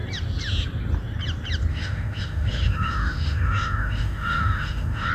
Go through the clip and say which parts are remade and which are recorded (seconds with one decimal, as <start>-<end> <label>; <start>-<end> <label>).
0.0-1.7 recorded; 1.7-5.1 remade